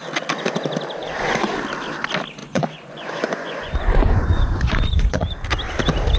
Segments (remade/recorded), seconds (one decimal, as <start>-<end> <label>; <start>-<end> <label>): 0.0-1.0 recorded; 1.0-1.5 remade; 1.5-2.4 recorded; 2.4-5.3 remade; 5.3-6.2 recorded